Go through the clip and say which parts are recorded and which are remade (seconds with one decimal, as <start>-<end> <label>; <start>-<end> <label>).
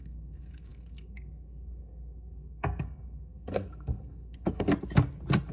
0.0-4.7 remade; 4.7-5.5 recorded